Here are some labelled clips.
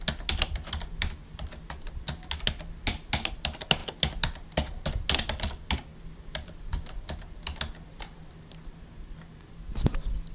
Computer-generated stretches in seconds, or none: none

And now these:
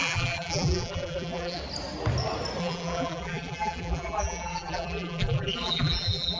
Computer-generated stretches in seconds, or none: 0.0-1.6; 2.6-6.4

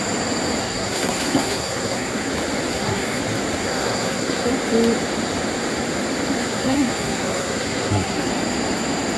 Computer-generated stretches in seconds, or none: 0.6-2.3; 2.7-3.2; 3.6-4.5; 6.4-8.3

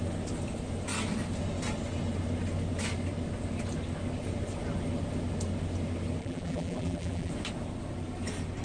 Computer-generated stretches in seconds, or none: 6.2-7.3